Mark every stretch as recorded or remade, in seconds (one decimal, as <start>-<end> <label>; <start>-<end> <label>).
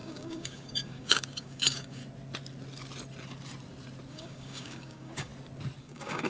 0.0-2.0 remade; 2.0-4.1 recorded; 4.1-5.3 remade; 5.3-5.8 recorded; 5.8-6.3 remade